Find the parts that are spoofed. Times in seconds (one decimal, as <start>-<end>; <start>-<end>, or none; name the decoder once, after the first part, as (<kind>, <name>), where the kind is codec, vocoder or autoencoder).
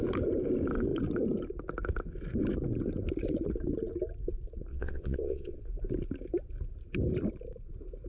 4.7-5.6 (vocoder, WaveNeXt)